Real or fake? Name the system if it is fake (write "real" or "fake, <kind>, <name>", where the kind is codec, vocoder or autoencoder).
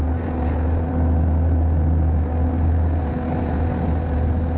real